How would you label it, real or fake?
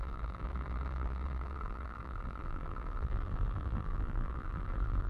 fake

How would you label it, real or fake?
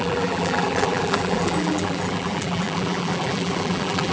fake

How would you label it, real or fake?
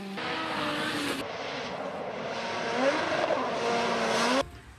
real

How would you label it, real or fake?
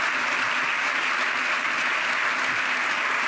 real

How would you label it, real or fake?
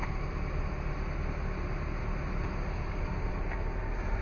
real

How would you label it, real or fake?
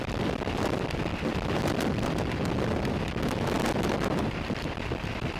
fake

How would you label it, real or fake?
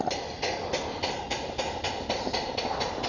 real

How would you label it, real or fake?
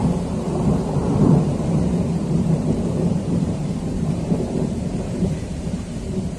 fake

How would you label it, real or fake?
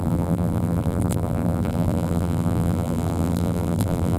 fake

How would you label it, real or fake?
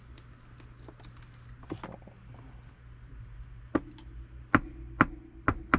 real